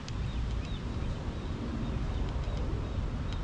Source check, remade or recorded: recorded